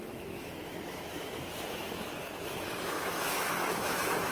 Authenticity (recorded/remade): remade